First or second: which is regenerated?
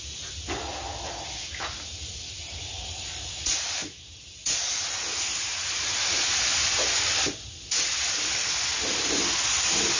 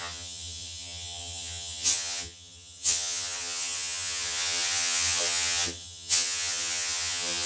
second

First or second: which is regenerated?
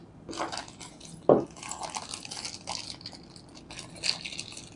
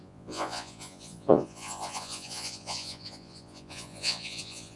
second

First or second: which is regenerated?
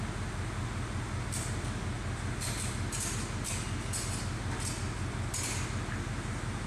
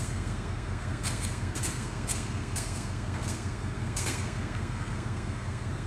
second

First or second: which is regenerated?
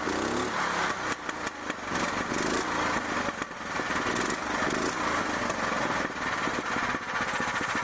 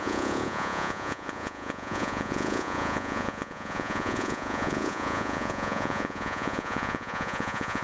second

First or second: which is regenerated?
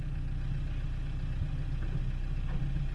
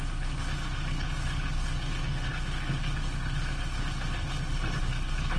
second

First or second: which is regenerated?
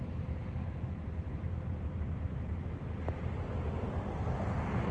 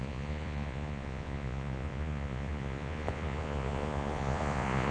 second